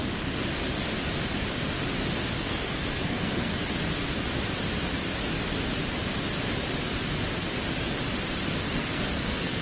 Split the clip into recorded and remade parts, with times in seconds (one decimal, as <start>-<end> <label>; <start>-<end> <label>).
0.0-2.4 recorded; 2.4-3.6 remade; 3.6-8.7 recorded; 8.7-9.6 remade